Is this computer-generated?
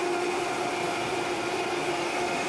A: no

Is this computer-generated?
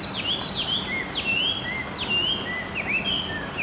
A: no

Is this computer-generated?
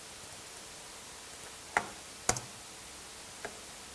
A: no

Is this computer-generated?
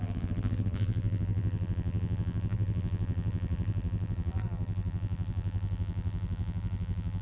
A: yes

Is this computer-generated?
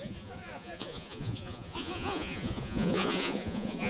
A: yes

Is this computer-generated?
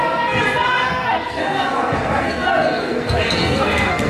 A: yes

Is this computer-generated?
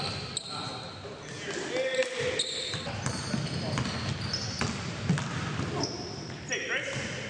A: no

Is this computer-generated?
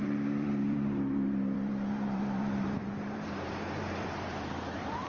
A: yes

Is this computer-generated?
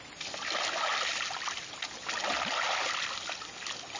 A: no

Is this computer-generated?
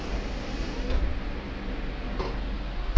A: no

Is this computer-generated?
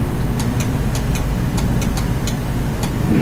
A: no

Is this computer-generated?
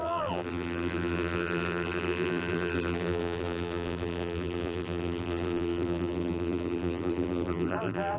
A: yes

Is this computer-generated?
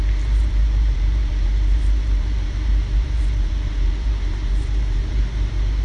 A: yes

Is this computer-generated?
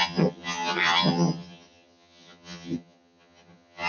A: yes